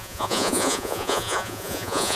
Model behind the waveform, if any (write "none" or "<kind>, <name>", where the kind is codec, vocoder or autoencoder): vocoder, Vocos